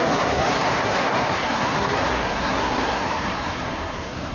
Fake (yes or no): yes